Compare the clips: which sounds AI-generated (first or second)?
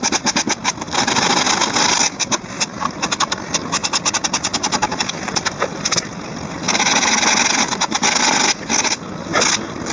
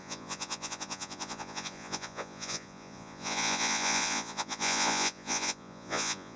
second